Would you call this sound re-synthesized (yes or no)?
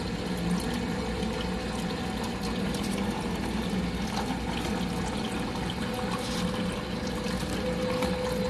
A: no